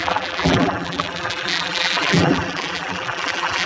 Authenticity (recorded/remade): remade